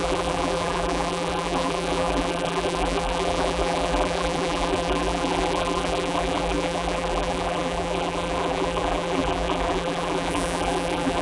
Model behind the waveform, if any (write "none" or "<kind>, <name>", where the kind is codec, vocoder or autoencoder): vocoder, BigVGAN v2